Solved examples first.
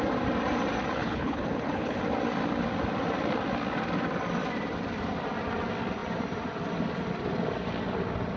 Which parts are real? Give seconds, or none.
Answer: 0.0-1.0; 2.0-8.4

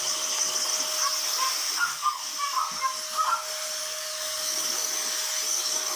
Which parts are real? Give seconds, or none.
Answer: 0.7-1.7; 2.3-3.8; 4.9-5.5

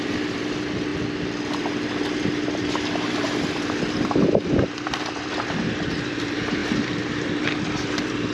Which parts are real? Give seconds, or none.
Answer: 0.9-2.3

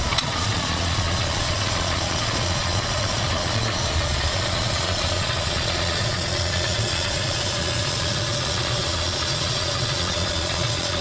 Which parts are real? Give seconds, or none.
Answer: none

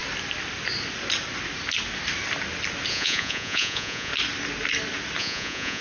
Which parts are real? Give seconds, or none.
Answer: 0.0-2.9; 4.1-5.2